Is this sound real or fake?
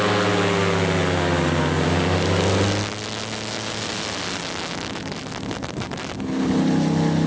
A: real